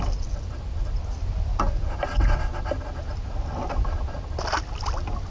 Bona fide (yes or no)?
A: yes